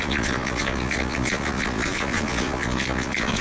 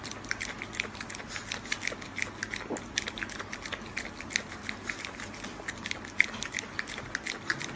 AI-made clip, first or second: first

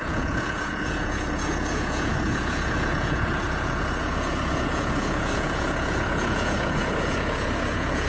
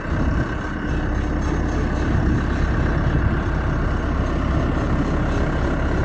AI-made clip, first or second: first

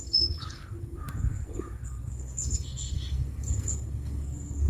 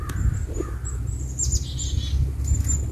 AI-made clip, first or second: first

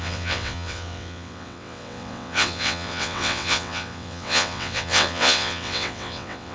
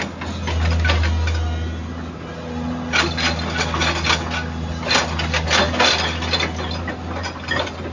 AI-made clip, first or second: first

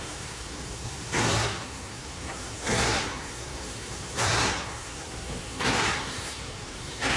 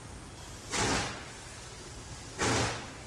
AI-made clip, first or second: first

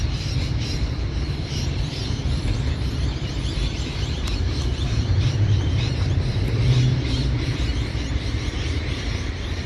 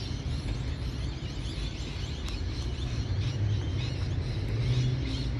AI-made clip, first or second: first